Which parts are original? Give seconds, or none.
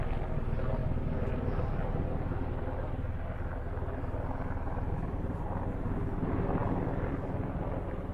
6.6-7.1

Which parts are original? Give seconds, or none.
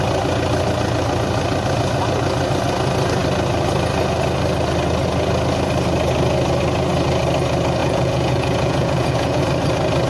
0.0-7.8; 9.4-10.1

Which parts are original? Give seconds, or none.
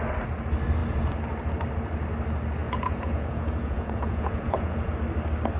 0.0-2.6; 4.9-5.6